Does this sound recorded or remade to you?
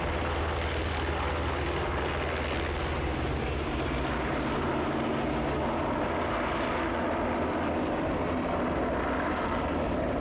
recorded